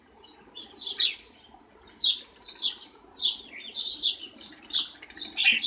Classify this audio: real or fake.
real